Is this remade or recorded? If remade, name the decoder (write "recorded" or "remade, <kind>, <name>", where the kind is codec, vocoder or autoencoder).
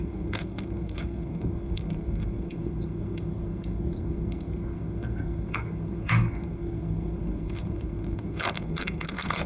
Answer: remade, codec, SNAC